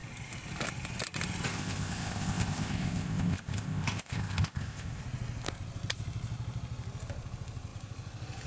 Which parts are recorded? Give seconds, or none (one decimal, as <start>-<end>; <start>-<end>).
0.0-1.5; 5.0-8.5